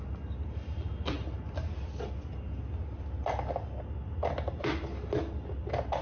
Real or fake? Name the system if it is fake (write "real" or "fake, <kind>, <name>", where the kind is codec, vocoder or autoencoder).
real